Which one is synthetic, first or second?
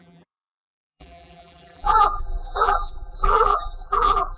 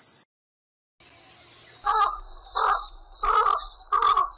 first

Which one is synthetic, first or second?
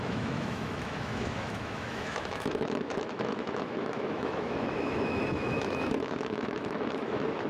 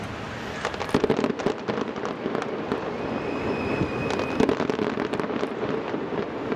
first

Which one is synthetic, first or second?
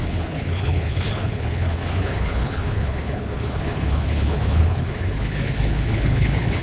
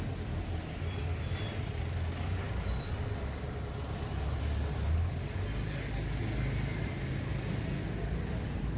first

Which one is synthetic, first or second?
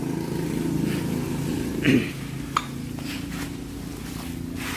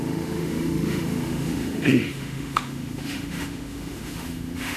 second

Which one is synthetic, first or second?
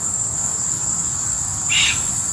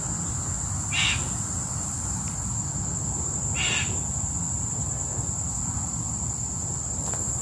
first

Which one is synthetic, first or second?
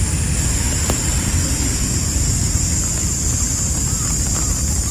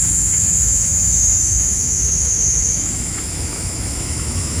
second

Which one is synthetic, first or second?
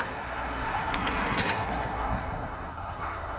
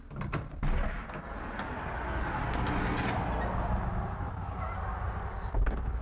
first